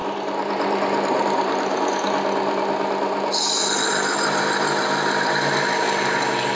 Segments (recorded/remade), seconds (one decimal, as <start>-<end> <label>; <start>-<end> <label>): 0.0-6.5 recorded